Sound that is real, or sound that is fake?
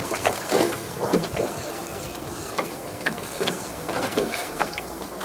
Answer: fake